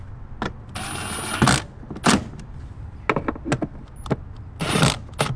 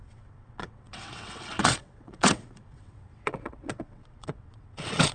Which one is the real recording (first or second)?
first